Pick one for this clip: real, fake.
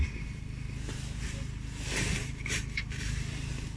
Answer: real